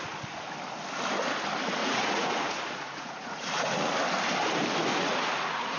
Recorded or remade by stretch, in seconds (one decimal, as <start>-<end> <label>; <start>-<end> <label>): 0.0-1.8 recorded; 1.8-3.9 remade; 3.9-4.9 recorded; 4.9-5.8 remade